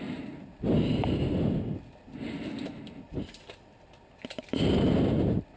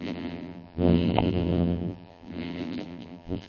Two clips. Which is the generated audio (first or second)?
second